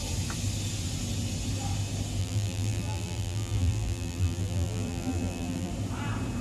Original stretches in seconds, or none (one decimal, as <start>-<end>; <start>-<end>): 0.0-2.2; 5.7-6.4